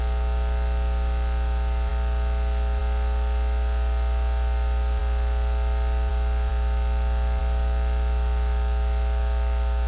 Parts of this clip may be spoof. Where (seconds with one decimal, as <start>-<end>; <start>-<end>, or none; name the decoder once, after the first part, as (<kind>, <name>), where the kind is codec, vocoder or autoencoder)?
none